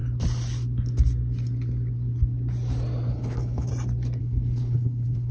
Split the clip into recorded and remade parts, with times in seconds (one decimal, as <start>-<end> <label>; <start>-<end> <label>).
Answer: 0.0-3.1 recorded; 3.1-3.7 remade; 3.7-4.2 recorded; 4.2-5.3 remade